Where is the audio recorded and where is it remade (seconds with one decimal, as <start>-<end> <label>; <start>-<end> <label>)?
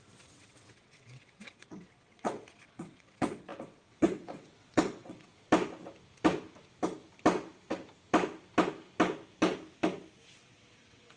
0.0-5.3 remade; 5.3-10.4 recorded; 10.4-11.2 remade